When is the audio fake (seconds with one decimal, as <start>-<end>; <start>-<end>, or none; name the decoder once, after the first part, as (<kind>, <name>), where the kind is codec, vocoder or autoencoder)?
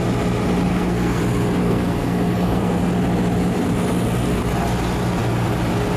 0.7-1.2 (codec, SNAC); 1.6-2.9